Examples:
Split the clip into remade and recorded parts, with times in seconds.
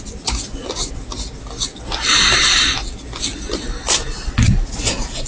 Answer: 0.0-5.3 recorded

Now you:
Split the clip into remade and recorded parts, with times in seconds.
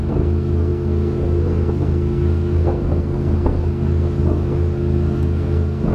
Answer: 0.0-5.9 remade